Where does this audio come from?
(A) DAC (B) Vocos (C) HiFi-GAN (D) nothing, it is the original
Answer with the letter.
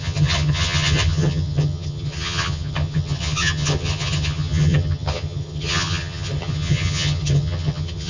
C